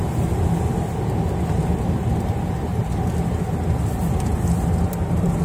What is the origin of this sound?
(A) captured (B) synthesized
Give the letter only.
A